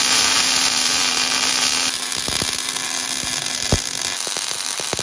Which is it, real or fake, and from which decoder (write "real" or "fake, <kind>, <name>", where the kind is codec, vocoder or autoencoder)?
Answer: fake, vocoder, BigVGAN v2